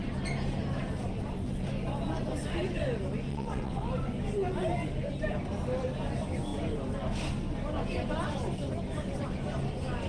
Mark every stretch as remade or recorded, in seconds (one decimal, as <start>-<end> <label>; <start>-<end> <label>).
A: 0.0-3.3 recorded; 3.3-3.9 remade; 3.9-10.1 recorded